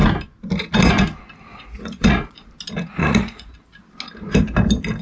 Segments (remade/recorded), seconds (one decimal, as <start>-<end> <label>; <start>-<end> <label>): 0.0-1.5 recorded; 1.5-2.5 remade; 2.5-3.0 recorded; 3.0-3.5 remade; 3.5-5.0 recorded

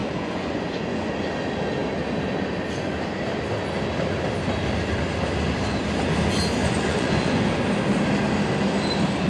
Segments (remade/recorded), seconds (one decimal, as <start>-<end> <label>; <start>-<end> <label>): 0.0-1.1 remade; 1.1-6.6 recorded; 6.6-7.5 remade; 7.5-9.3 recorded